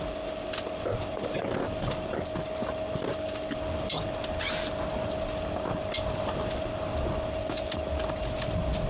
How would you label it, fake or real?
real